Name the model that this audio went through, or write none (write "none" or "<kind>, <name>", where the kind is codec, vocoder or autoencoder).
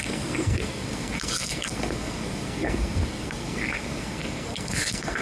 codec, SNAC